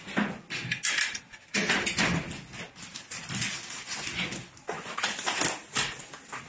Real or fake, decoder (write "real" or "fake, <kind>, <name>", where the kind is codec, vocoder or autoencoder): real